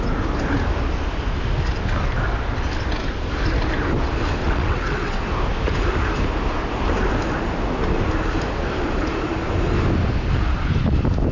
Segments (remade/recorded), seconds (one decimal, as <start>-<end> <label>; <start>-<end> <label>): 0.0-4.4 recorded; 4.4-5.2 remade; 5.2-11.3 recorded